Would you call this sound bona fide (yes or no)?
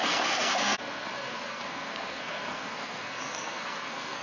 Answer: no